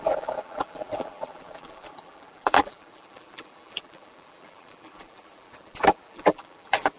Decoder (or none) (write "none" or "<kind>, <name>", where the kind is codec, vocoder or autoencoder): vocoder, BigVGAN v2